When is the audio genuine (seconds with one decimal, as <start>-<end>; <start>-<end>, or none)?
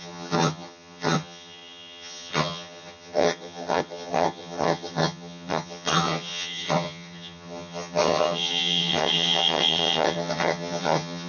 none